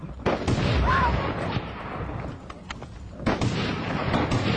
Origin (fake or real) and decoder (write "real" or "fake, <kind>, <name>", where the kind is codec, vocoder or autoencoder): real